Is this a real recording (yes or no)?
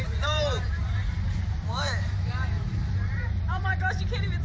no